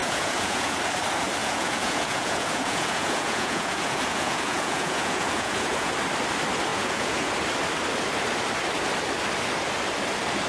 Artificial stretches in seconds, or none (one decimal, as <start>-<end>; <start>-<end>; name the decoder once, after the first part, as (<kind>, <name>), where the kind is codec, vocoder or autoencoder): 0.0-0.8 (vocoder, Vocos); 1.4-5.9; 6.7-7.3